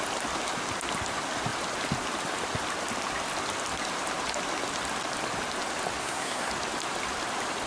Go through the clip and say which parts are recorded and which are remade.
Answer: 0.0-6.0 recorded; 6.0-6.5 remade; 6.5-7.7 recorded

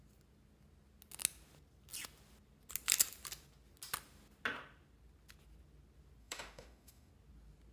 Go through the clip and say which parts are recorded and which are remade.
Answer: 0.0-6.2 recorded; 6.2-7.1 remade; 7.1-7.7 recorded

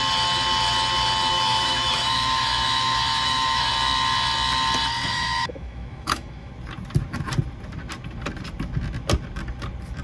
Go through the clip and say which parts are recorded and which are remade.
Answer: 0.0-1.3 recorded; 1.3-3.7 remade; 3.7-5.1 recorded; 5.1-6.5 remade; 6.5-10.0 recorded